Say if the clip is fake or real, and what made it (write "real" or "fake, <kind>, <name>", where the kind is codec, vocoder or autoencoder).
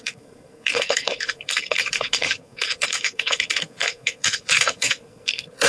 fake, codec, SNAC